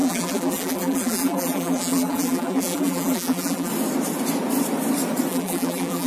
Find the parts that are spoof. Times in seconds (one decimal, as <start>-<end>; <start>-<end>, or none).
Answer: 0.0-3.7; 5.3-6.1

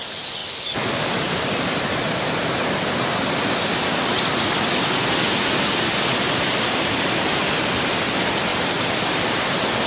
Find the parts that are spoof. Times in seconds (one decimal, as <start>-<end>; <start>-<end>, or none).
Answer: 6.1-7.4; 8.5-9.4